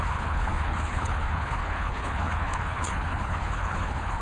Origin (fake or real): fake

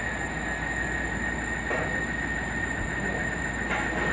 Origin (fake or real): real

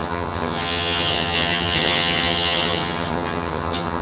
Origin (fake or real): fake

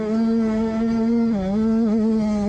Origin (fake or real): real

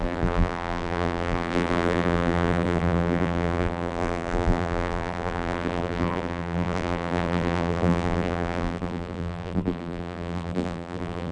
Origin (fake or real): fake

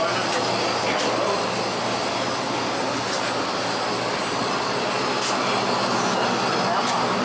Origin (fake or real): real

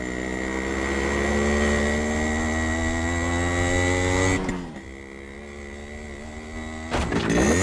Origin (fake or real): real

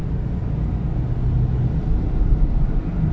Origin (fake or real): real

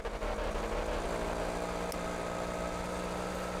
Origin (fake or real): real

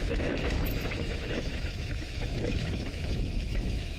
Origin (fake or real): fake